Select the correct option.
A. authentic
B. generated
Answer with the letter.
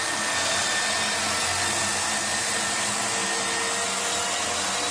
A